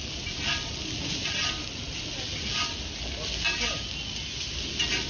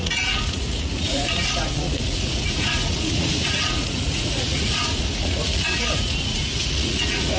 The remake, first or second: second